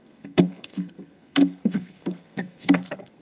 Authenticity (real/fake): fake